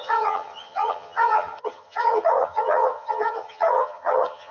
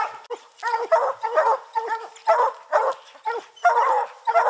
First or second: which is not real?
first